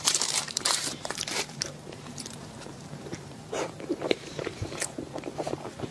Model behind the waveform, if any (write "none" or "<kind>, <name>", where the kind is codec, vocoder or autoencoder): vocoder, BigVGAN v2